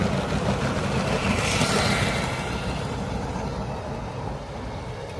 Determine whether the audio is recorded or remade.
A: recorded